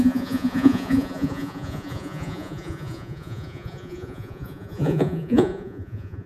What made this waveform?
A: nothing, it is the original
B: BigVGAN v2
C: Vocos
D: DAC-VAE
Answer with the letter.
C